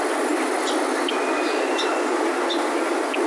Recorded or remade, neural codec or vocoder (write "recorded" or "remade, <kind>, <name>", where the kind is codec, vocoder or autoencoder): recorded